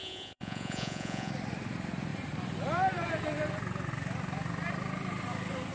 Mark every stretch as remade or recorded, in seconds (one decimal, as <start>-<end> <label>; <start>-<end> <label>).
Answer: 0.0-1.3 remade; 1.3-5.7 recorded